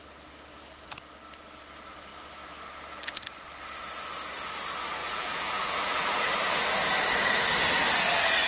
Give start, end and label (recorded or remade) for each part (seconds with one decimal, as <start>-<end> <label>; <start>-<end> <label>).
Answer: 0.0-5.0 recorded; 5.0-6.7 remade; 6.7-8.5 recorded